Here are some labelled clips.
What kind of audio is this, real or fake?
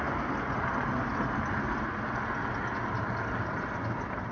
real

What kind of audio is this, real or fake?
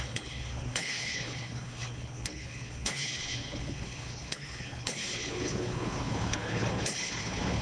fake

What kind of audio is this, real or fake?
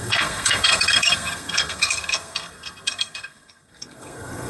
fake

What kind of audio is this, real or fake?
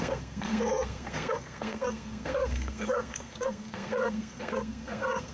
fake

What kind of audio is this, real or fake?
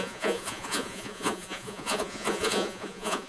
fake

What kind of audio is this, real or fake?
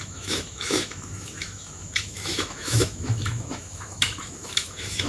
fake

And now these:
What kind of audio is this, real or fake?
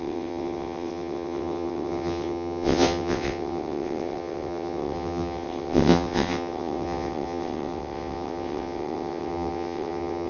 fake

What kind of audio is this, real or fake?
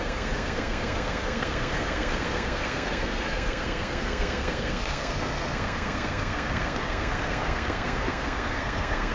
fake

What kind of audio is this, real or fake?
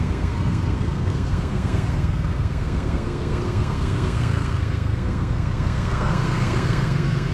fake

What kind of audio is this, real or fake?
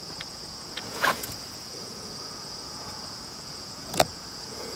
fake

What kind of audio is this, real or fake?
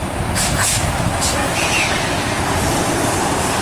real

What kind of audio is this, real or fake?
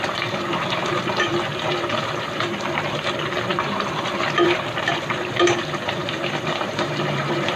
fake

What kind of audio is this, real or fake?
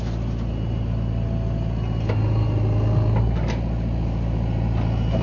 real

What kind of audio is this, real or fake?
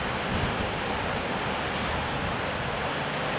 real